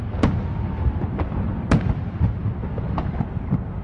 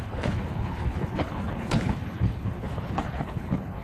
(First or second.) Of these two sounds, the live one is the first